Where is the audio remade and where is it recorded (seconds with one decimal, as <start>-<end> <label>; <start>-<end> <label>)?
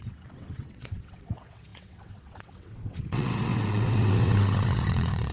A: 0.0-5.3 remade